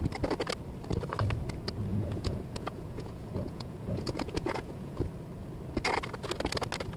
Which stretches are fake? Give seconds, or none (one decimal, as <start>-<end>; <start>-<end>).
1.9-5.0